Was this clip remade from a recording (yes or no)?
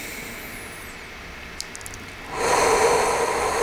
no